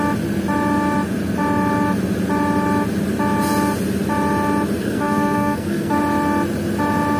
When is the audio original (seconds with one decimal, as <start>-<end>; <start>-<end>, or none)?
0.0-4.8; 6.0-7.2

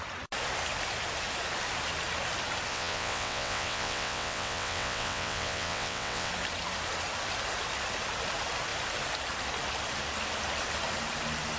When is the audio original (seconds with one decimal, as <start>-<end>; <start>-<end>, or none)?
0.0-2.7; 6.3-11.6

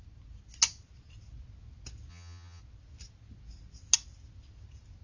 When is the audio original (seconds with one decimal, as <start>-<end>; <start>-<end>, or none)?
0.0-2.1; 2.6-5.0

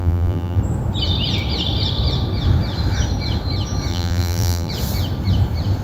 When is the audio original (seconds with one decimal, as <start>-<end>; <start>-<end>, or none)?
0.6-3.9; 4.7-5.8